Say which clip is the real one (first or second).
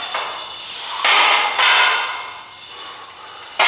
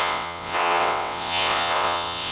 first